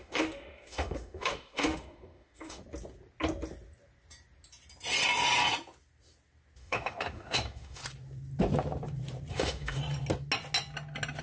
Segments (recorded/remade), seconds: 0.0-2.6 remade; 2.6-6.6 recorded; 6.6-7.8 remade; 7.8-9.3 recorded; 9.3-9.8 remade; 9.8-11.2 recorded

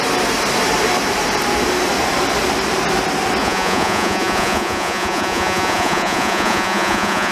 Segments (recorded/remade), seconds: 0.0-3.4 recorded; 3.4-7.3 remade